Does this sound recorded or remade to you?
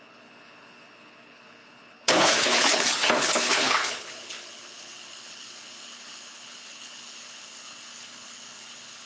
remade